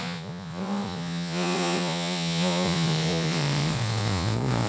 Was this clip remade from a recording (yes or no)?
yes